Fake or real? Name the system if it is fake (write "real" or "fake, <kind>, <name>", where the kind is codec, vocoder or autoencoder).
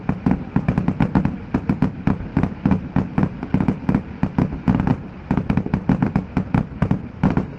real